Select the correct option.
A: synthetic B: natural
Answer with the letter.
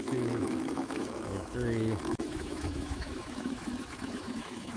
A